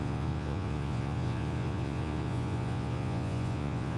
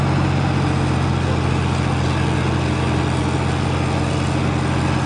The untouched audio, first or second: second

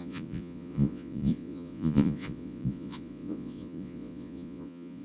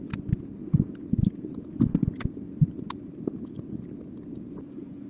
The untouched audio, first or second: second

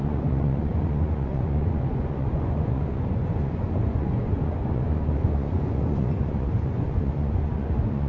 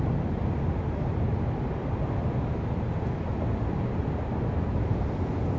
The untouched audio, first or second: second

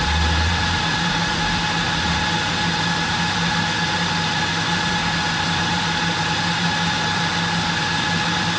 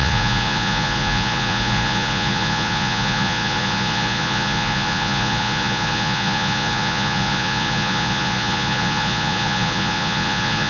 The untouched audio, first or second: first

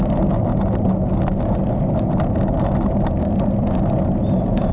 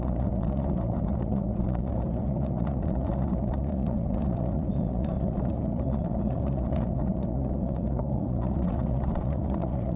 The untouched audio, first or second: first